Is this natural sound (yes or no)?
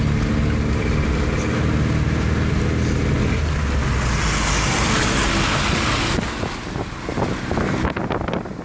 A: yes